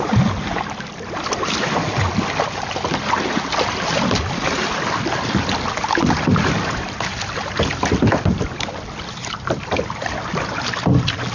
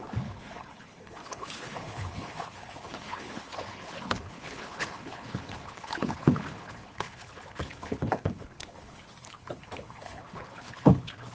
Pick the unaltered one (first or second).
first